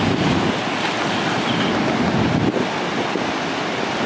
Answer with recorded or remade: recorded